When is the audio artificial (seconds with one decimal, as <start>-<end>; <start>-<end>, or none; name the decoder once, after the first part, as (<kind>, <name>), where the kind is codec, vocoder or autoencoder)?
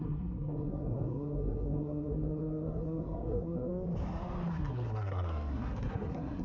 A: 0.0-3.7 (codec, SNAC); 4.5-6.4